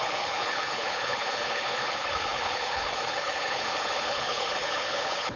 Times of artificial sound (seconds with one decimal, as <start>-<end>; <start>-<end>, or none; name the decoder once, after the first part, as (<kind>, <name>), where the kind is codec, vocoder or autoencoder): 0.0-5.4 (codec, HILCodec)